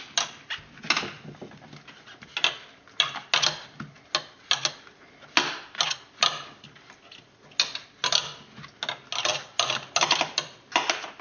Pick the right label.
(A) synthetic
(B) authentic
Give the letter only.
B